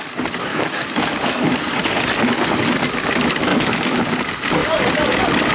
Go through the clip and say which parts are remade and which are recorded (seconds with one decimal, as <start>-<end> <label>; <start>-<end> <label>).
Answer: 0.0-0.5 recorded; 0.5-1.1 remade; 1.1-3.5 recorded; 3.5-4.0 remade; 4.0-5.5 recorded